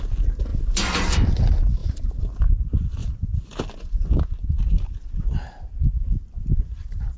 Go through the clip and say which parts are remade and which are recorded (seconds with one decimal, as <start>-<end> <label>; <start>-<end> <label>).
0.0-0.5 recorded; 0.5-1.3 remade; 1.3-1.8 recorded; 1.8-2.4 remade; 2.4-3.0 recorded; 3.0-4.1 remade; 4.1-7.2 recorded